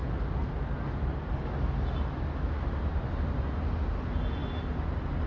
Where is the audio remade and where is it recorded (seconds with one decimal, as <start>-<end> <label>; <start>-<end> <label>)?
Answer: 0.0-5.3 recorded